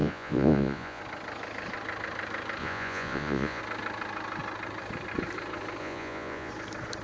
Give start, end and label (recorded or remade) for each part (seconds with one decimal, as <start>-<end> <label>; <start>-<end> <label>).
0.0-1.0 remade; 1.0-2.6 recorded; 2.6-3.6 remade; 3.6-5.8 recorded; 5.8-6.5 remade; 6.5-7.0 recorded